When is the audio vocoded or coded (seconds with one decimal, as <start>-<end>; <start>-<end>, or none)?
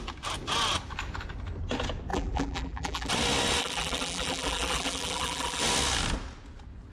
2.1-3.1; 3.6-5.6